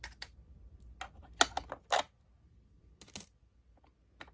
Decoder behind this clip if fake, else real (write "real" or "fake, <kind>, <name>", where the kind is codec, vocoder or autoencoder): real